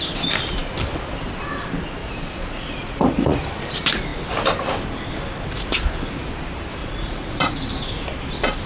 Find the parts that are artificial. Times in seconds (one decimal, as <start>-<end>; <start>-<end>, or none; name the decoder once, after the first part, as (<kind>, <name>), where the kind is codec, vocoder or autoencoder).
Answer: 2.0-3.4 (vocoder, Vocos); 6.8-7.5